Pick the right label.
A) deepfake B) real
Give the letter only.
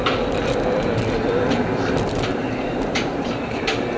A